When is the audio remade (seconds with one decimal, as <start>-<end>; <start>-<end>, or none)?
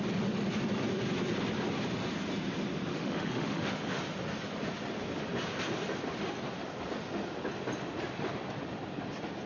2.9-4.0